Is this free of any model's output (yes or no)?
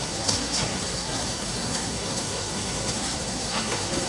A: no